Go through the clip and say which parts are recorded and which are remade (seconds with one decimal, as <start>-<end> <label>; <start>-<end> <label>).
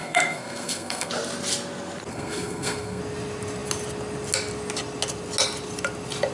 0.0-1.1 remade; 1.1-2.1 recorded; 2.1-3.0 remade; 3.0-6.3 recorded